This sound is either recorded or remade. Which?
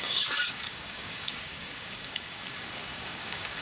remade